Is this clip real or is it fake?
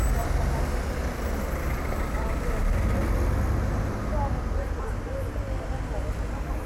real